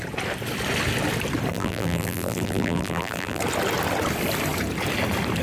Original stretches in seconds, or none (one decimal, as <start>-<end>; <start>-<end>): 0.0-1.5; 3.4-5.4